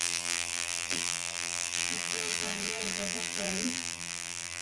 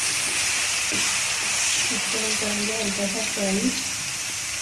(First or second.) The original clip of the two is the second